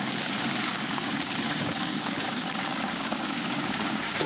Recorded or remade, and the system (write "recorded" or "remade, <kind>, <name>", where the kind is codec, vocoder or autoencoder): remade, codec, DAC